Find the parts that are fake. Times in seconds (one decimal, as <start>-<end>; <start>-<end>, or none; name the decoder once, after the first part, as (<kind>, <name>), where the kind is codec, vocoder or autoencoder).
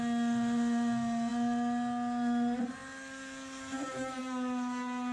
none